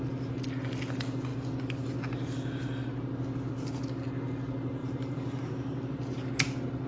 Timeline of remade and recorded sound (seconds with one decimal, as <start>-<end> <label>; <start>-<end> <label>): 0.0-4.8 recorded; 4.8-6.3 remade; 6.3-6.9 recorded